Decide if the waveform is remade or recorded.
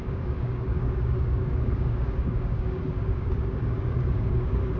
remade